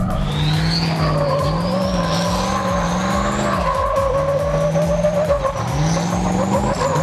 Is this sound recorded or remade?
recorded